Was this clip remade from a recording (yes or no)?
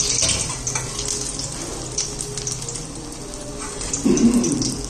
no